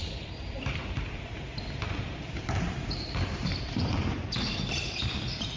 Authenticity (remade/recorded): remade